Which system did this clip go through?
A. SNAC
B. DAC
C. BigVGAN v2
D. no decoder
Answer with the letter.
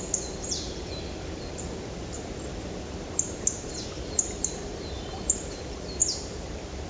D